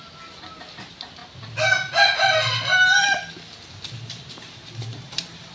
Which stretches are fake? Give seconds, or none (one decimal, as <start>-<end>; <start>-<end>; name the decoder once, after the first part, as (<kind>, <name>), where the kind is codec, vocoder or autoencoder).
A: none